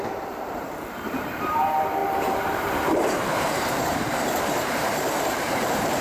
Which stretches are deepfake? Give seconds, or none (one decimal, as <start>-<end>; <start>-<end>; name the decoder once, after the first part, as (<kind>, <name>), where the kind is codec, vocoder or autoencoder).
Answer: 0.0-6.0 (vocoder, BigVGAN v2)

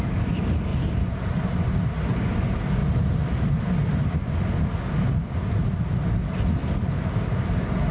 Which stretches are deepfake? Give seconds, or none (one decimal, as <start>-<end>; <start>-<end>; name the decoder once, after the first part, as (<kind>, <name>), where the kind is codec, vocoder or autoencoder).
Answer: 0.7-1.7 (vocoder, BigVGAN v2); 2.8-4.1; 6.6-7.4

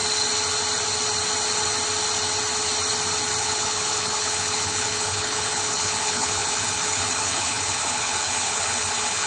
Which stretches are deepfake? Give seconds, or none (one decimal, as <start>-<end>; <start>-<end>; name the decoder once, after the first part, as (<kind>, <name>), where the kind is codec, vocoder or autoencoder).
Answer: 3.4-9.3 (codec, HILCodec)

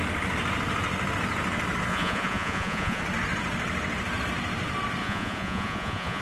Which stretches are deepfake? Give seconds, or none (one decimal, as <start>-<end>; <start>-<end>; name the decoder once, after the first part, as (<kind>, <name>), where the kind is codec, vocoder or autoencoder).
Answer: 1.9-3.0 (vocoder, Vocos); 5.0-6.2